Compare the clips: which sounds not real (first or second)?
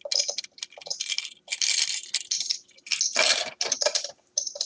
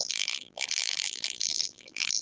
second